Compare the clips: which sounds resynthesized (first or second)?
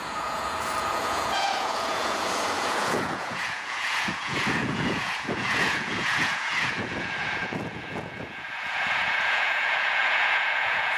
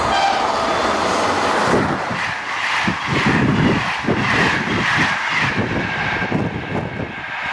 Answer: first